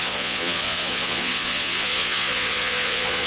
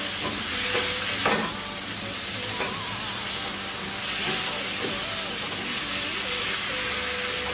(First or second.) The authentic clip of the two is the second